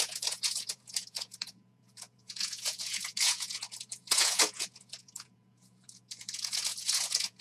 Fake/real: fake